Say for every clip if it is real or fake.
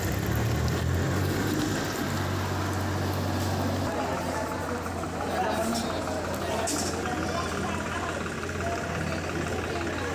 real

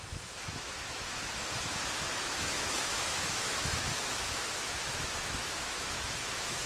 fake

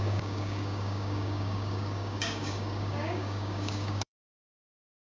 fake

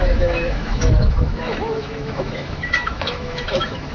fake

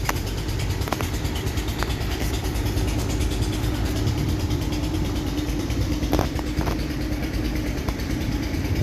fake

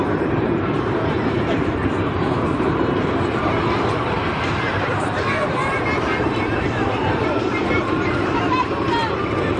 fake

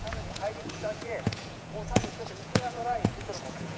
fake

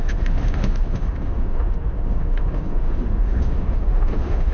fake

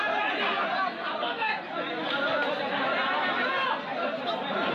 real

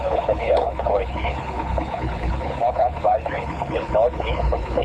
fake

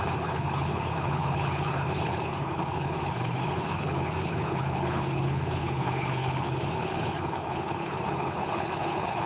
fake